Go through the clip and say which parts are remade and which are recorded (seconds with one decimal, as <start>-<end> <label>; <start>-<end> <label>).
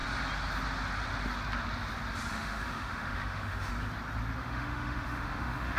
0.0-2.3 recorded; 2.3-3.7 remade; 3.7-4.4 recorded; 4.4-5.8 remade